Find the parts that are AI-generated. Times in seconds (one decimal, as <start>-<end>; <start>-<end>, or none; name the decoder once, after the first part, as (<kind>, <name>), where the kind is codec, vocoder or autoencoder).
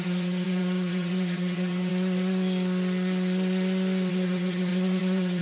0.0-1.9 (vocoder, HiFi-GAN); 4.1-5.4